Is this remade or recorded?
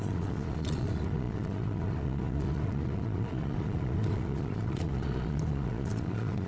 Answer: remade